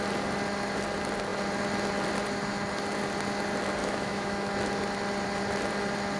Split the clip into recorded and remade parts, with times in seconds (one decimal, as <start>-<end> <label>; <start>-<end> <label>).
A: 0.0-3.8 recorded; 3.8-4.5 remade; 4.5-6.2 recorded